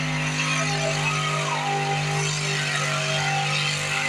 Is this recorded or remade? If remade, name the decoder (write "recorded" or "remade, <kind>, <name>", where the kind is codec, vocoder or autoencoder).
recorded